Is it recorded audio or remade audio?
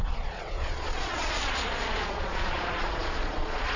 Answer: remade